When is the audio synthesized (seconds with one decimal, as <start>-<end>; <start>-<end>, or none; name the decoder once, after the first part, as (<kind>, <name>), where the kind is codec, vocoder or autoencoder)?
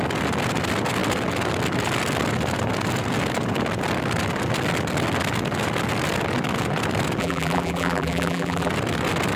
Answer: 7.2-8.7 (vocoder, BigVGAN v2)